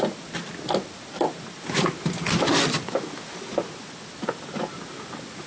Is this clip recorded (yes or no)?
yes